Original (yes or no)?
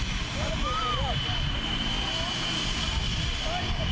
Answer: yes